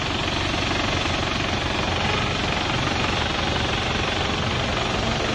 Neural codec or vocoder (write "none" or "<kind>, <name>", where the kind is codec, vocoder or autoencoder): none